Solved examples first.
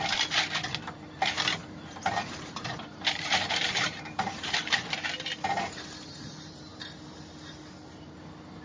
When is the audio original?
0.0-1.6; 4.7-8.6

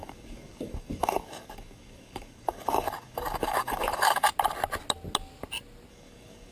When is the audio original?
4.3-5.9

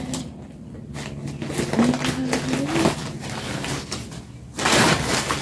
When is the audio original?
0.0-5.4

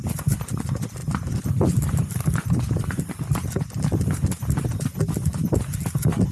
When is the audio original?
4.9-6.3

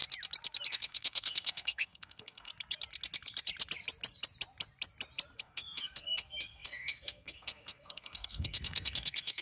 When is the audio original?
0.0-0.7; 2.5-5.4